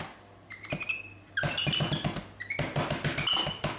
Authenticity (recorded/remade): recorded